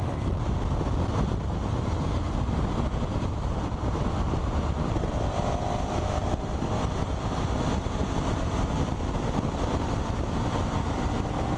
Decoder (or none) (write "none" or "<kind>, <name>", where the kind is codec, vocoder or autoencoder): vocoder, BigVGAN v2